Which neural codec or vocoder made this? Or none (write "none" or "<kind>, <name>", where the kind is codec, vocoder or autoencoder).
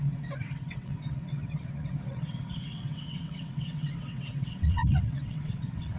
vocoder, WaveNeXt